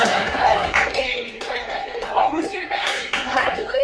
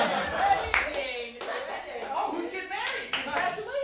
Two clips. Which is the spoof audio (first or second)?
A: first